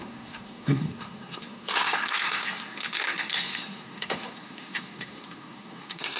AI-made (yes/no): yes